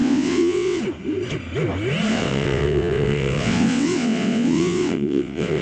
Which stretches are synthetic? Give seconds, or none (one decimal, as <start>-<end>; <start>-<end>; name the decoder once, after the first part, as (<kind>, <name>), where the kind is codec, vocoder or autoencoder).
0.0-0.8 (vocoder, WaveNeXt); 2.1-5.6